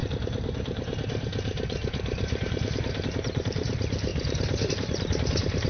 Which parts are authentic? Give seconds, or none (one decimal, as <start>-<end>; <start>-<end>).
none